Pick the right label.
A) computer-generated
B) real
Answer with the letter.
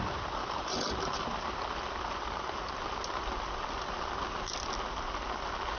B